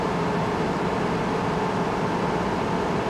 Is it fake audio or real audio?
real